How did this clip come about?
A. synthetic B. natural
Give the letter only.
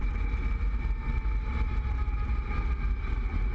B